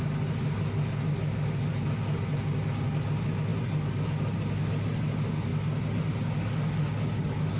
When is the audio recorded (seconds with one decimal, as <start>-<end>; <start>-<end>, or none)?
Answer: 0.0-7.6